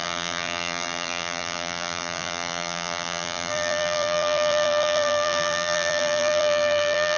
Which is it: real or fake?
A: fake